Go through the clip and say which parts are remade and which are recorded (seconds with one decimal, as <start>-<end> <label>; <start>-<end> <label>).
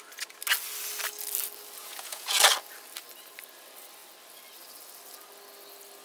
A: 0.0-1.8 recorded; 1.8-2.4 remade; 2.4-6.0 recorded